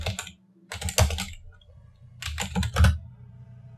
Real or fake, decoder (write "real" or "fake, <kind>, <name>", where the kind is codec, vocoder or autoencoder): real